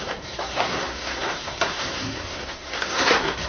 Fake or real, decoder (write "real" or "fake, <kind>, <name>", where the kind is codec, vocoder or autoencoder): fake, codec, SNAC